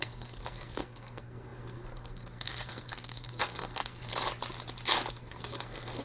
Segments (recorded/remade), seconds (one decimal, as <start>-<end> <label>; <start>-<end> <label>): 0.0-4.1 remade; 4.1-5.1 recorded; 5.1-6.0 remade